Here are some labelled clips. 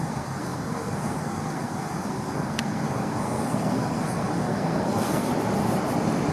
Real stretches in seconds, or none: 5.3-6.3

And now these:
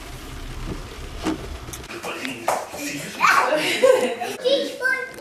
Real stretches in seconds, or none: 0.0-0.8; 3.9-5.2

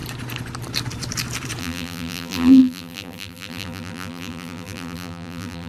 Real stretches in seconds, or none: 0.0-1.6

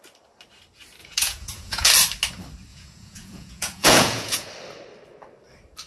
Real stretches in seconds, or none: 0.0-1.0; 1.9-2.7; 4.5-5.9